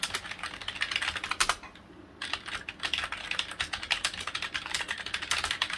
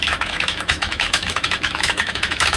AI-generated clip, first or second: second